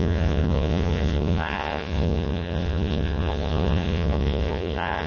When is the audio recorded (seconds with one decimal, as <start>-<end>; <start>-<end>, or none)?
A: none